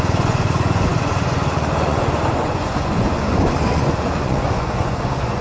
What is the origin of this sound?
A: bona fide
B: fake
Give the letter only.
B